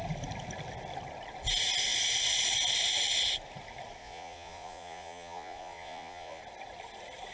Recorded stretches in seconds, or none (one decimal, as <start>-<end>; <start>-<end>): 0.0-4.0; 6.4-7.3